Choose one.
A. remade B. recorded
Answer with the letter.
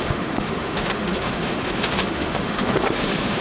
A